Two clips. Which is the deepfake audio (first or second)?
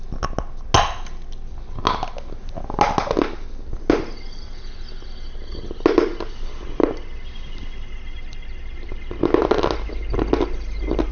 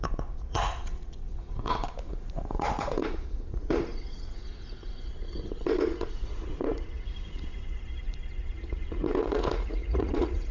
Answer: second